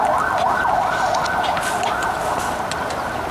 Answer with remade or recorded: recorded